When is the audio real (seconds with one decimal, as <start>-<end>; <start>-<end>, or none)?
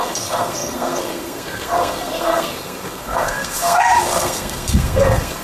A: none